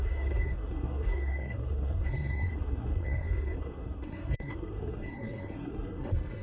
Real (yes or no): no